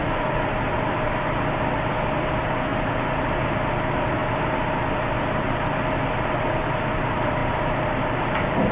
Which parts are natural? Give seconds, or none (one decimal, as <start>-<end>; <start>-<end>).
0.0-2.7; 3.4-8.7